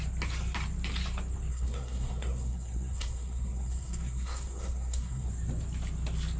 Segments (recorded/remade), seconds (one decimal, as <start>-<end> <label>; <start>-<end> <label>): 0.0-1.5 recorded; 1.5-5.3 remade; 5.3-6.4 recorded